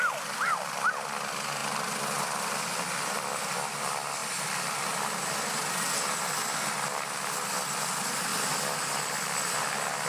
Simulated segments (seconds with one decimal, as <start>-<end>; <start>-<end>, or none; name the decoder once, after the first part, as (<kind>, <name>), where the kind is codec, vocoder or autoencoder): none